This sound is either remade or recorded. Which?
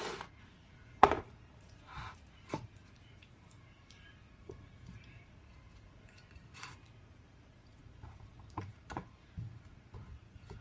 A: remade